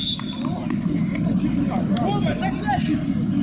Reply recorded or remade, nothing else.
recorded